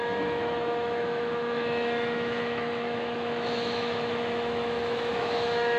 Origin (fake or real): fake